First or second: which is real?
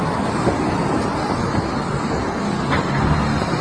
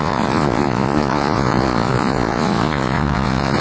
first